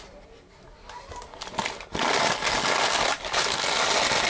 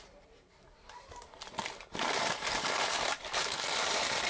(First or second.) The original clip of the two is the first